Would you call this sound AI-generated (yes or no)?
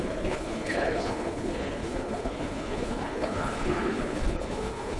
yes